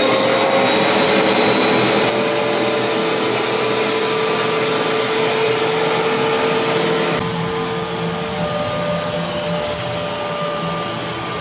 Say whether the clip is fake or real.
real